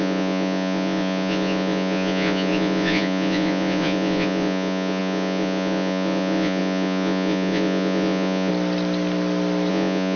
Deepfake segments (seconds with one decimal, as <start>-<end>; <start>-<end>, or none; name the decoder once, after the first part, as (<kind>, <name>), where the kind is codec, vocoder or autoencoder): 0.0-8.5 (vocoder, Vocos); 9.7-10.2